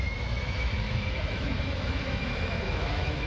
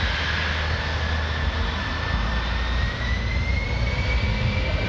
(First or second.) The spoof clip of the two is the first